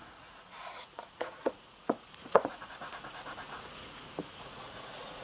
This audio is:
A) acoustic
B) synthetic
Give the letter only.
B